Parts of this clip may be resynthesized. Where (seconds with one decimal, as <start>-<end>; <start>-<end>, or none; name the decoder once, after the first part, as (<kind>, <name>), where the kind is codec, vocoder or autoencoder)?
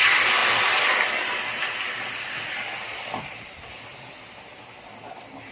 none